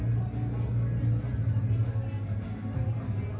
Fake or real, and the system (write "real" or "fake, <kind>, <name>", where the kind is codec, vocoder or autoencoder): real